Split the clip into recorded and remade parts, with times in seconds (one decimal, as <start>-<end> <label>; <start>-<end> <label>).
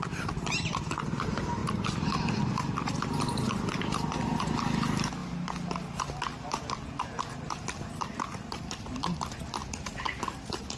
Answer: 0.0-10.8 recorded